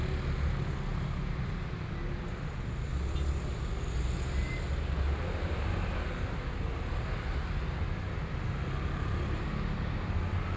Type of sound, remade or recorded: recorded